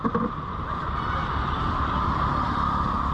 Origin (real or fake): real